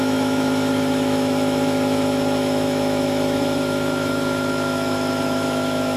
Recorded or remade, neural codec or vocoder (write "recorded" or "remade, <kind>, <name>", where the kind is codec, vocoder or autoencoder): remade, autoencoder, DAC-VAE